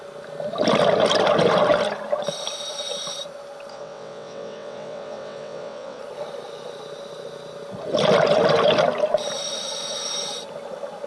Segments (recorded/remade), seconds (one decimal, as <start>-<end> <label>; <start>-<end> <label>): 0.0-3.7 recorded; 3.7-6.0 remade; 6.0-11.1 recorded